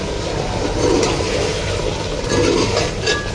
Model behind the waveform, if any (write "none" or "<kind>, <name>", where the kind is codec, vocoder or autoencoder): none